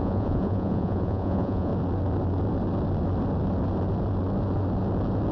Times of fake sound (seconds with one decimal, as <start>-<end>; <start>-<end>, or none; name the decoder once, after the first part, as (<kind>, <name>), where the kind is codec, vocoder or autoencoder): 0.0-1.7 (vocoder, Vocos)